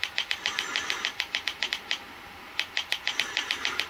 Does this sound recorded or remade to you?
recorded